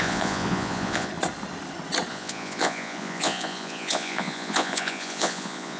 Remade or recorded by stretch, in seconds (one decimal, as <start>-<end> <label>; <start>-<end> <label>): 0.0-1.1 remade; 1.1-2.1 recorded; 2.1-5.8 remade